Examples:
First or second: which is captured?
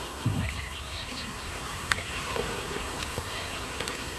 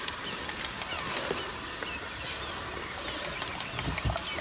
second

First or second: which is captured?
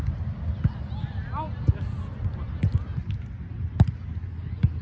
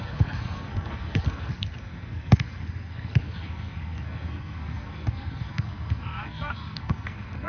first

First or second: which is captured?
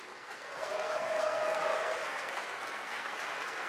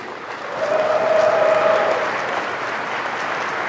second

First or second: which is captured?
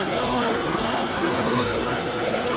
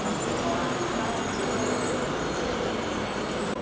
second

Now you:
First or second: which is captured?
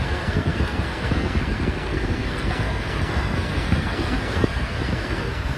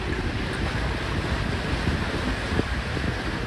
second